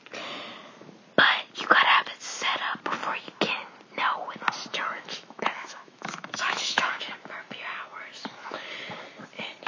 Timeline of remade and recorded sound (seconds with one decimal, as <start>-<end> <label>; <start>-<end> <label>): 0.0-4.7 recorded; 4.7-6.9 remade; 6.9-9.7 recorded